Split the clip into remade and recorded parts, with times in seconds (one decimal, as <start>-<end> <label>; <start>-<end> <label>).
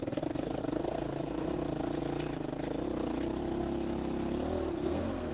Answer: 0.0-1.5 remade; 1.5-4.7 recorded; 4.7-5.3 remade